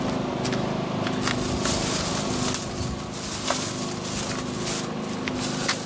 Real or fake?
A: real